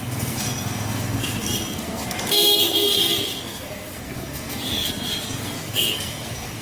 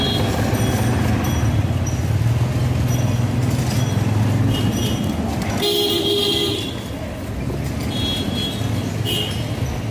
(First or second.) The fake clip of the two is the first